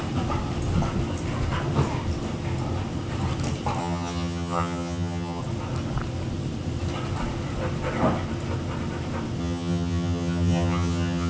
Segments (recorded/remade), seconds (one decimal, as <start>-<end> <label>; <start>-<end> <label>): 0.0-3.8 recorded; 3.8-5.4 remade; 5.4-9.4 recorded; 9.4-11.3 remade